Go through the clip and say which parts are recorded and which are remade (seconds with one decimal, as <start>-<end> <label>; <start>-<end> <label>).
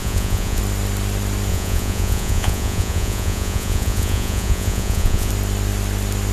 0.0-0.6 remade; 0.6-1.5 recorded; 1.5-5.3 remade; 5.3-6.3 recorded